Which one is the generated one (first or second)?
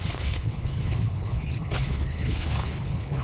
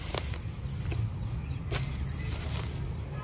first